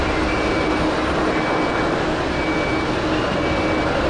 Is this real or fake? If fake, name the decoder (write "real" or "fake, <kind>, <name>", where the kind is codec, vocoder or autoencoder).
real